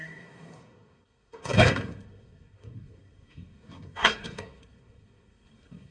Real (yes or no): no